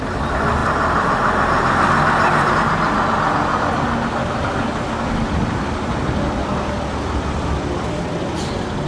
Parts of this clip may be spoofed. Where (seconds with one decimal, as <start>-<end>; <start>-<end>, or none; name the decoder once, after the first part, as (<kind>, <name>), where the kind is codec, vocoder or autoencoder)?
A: none